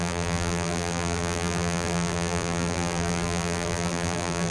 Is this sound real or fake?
fake